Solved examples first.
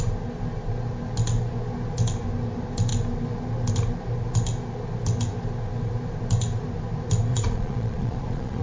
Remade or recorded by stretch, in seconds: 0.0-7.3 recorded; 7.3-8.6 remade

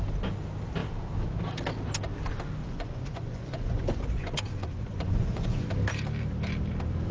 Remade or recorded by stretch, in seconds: 0.0-2.6 recorded; 2.6-5.7 remade; 5.7-7.1 recorded

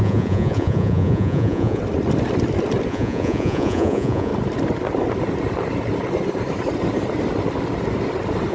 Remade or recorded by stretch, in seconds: 0.0-1.8 remade; 1.8-2.9 recorded; 2.9-4.3 remade; 4.3-8.5 recorded

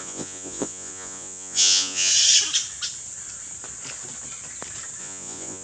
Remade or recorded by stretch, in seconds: 0.0-2.1 remade; 2.1-5.0 recorded; 5.0-5.6 remade

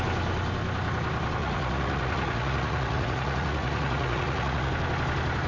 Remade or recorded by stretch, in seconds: 0.0-1.4 recorded; 1.4-4.7 remade; 4.7-5.5 recorded

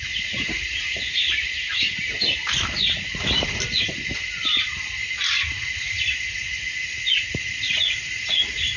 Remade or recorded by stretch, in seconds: 0.0-8.8 recorded

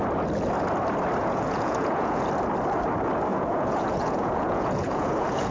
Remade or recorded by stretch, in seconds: 0.0-1.2 recorded; 1.2-2.2 remade; 2.2-3.3 recorded; 3.3-5.5 remade

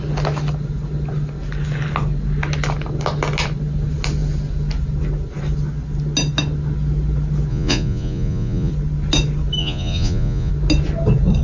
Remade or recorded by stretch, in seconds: 0.0-7.5 recorded; 7.5-8.7 remade; 8.7-9.6 recorded; 9.6-10.5 remade; 10.5-11.4 recorded